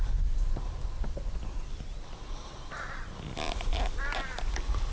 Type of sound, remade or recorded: recorded